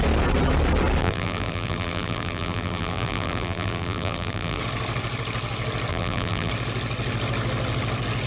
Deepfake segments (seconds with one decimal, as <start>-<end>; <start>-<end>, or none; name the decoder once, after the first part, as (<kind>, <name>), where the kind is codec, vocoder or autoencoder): 1.0-4.6 (vocoder, BigVGAN v2); 5.9-6.5